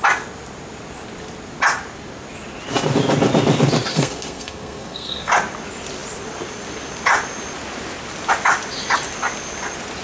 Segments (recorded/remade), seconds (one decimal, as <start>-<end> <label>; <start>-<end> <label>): 0.0-3.9 recorded; 3.9-5.3 remade; 5.3-10.0 recorded